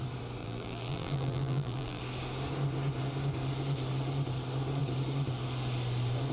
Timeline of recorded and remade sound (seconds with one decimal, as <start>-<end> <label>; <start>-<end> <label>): 0.0-0.4 recorded; 0.4-2.0 remade; 2.0-6.3 recorded

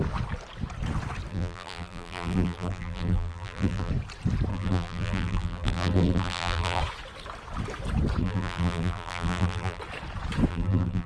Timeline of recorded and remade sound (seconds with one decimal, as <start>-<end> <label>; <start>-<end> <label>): 0.0-1.3 recorded; 1.3-3.9 remade; 3.9-4.5 recorded; 4.5-6.8 remade; 6.8-8.2 recorded; 8.2-9.8 remade; 9.8-10.5 recorded; 10.5-11.1 remade

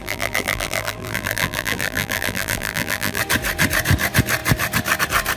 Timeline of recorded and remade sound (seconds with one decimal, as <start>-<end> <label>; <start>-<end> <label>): 0.0-3.2 remade; 3.2-5.4 recorded

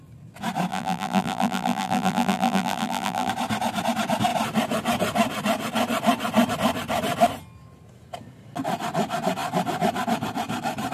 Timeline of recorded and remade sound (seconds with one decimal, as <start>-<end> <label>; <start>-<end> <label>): 0.0-0.7 recorded; 0.7-3.3 remade; 3.3-10.9 recorded

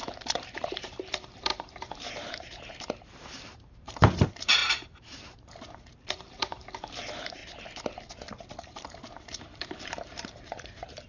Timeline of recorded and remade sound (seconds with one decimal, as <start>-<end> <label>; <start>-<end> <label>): 0.0-7.4 remade; 7.4-8.6 recorded; 8.6-11.1 remade

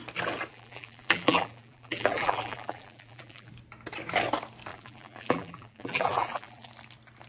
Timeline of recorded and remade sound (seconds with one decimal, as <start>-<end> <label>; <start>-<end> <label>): 0.0-0.5 recorded; 0.5-3.5 remade; 3.5-4.7 recorded; 4.7-6.7 remade; 6.7-7.3 recorded